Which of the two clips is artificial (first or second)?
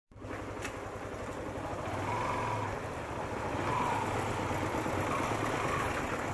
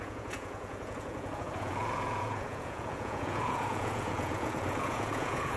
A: second